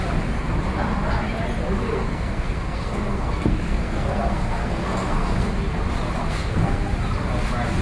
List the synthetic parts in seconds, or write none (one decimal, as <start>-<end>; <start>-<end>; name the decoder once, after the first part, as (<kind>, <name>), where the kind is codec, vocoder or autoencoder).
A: 1.9-5.5 (codec, SNAC); 6.2-6.8